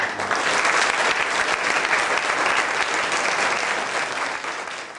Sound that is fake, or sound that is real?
real